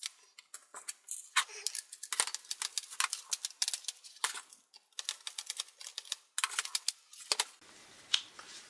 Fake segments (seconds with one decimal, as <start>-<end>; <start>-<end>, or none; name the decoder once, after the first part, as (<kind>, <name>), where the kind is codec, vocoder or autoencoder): none